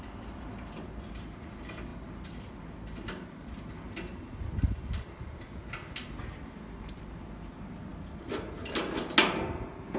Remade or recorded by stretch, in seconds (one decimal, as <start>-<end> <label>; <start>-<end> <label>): 0.0-10.0 recorded